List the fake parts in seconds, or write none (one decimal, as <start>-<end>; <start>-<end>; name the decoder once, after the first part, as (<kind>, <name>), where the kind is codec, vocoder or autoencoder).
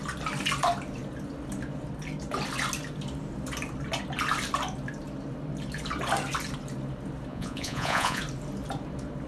7.3-8.2 (vocoder, Vocos)